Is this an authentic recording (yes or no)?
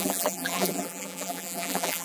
no